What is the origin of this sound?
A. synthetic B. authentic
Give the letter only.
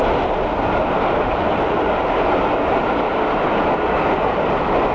B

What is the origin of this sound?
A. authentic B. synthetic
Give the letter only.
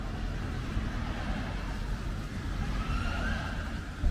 A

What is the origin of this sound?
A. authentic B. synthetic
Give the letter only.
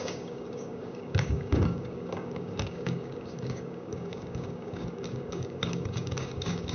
B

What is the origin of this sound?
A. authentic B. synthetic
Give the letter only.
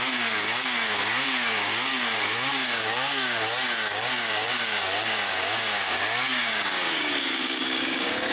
B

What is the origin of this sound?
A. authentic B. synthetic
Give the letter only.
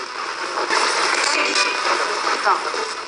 A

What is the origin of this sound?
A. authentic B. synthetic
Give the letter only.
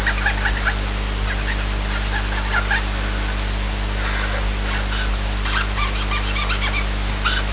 A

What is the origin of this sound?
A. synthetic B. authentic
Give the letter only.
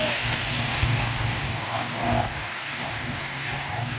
A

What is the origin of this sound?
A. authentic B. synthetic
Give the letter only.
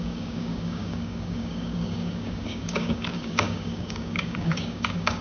B